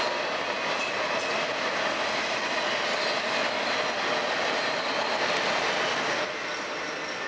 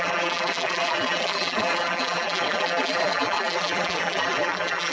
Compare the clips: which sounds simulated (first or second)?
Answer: second